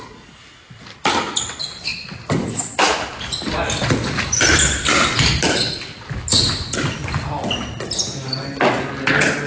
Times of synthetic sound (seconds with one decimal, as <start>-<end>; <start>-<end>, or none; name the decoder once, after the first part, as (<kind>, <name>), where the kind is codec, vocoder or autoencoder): none